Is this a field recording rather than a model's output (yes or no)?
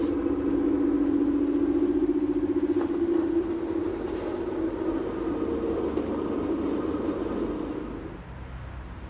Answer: yes